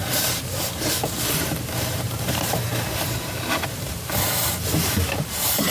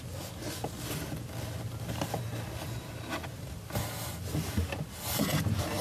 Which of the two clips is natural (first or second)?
second